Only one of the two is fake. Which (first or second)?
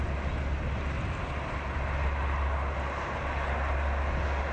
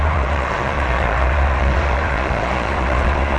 second